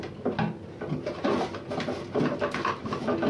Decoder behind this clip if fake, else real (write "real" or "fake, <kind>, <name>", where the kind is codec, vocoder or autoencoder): real